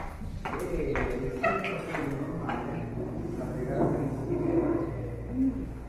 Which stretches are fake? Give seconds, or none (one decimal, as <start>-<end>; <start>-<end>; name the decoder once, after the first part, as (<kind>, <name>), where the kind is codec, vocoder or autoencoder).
0.9-1.8 (vocoder, BigVGAN v2); 2.9-3.5